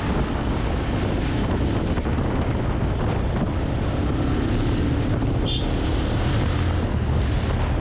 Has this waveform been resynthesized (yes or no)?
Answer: no